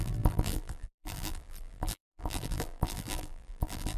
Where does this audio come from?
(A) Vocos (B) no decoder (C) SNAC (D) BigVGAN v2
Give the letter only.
D